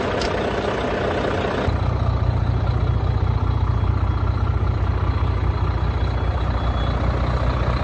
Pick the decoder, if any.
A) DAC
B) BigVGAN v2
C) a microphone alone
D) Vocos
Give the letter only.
C